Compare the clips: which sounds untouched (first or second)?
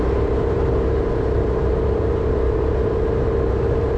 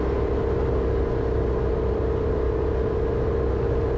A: second